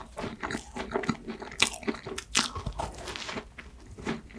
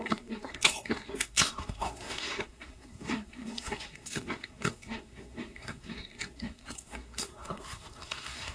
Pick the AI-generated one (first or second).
second